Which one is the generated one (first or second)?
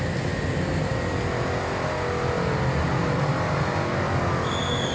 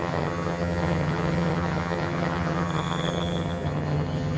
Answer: second